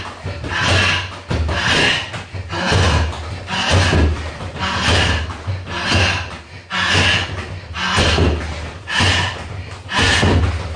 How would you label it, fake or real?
real